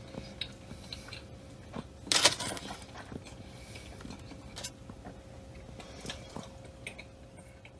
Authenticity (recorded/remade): recorded